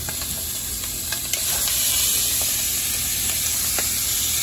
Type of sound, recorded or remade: recorded